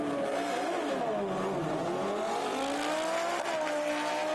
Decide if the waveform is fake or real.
real